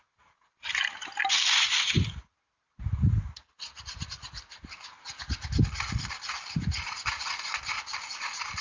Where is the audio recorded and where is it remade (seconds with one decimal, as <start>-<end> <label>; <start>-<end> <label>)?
0.0-8.6 recorded